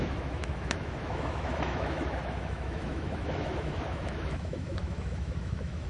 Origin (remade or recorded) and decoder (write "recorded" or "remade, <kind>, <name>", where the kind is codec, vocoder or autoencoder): remade, autoencoder, DAC-VAE